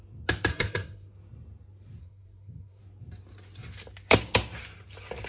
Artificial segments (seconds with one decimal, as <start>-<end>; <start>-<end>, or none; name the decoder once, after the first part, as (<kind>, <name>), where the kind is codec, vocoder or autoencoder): 0.5-1.1 (codec, SNAC); 2.0-2.8